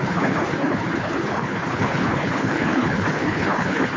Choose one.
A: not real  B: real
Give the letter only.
A